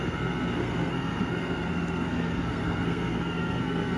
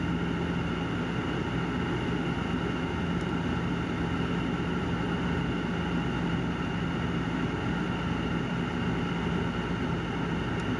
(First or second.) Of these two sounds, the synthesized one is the first